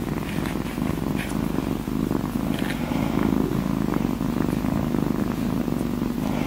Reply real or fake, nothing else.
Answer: real